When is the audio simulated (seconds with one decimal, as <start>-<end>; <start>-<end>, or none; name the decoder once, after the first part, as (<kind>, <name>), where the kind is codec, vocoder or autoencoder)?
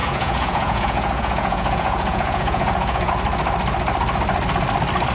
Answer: 0.0-3.1 (vocoder, Vocos)